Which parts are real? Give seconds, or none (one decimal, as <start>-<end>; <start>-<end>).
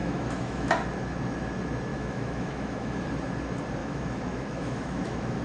0.7-1.9; 3.1-3.8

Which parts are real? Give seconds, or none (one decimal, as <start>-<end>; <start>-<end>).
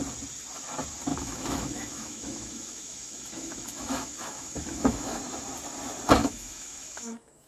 0.0-1.1; 5.2-6.2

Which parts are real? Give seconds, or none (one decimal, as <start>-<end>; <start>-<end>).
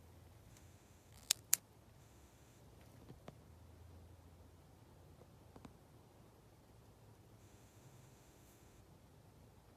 0.0-0.5; 1.1-2.0; 2.6-7.4; 8.8-9.8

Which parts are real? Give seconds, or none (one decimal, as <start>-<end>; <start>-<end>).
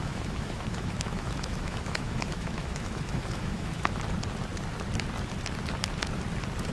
4.0-6.7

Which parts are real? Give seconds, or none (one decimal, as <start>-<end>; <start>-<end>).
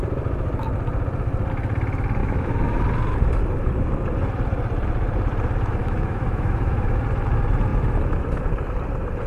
0.0-2.2; 2.8-5.8; 7.0-9.3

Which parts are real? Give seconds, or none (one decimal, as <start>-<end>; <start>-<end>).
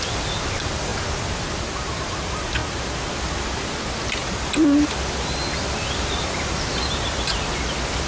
0.0-8.1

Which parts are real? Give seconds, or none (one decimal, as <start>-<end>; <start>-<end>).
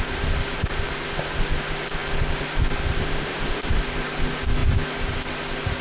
0.0-3.0; 3.8-5.8